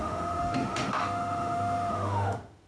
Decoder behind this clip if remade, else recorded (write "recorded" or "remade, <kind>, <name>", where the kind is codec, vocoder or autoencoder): remade, autoencoder, DAC-VAE